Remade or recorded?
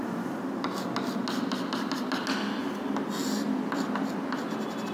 recorded